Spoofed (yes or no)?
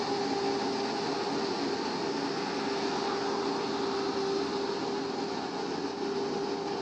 no